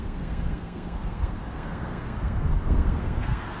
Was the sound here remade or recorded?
remade